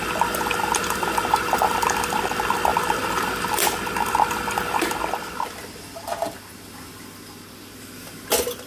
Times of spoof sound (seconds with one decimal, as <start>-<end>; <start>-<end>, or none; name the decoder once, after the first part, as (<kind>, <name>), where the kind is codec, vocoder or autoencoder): none